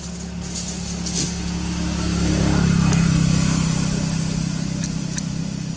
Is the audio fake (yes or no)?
no